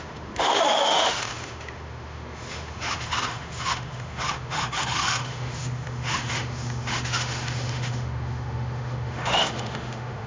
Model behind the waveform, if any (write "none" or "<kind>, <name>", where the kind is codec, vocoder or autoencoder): autoencoder, DAC-VAE